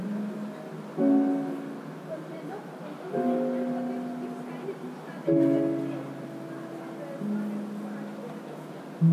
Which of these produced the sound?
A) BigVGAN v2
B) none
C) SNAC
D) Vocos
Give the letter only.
B